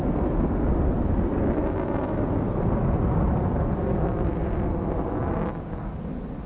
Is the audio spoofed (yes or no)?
no